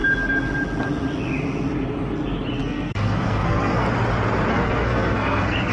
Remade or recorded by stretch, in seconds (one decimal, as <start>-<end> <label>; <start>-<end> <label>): 0.0-2.6 recorded; 2.6-3.9 remade; 3.9-4.5 recorded; 4.5-5.7 remade